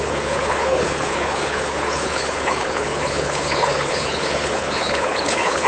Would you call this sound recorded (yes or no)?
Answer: no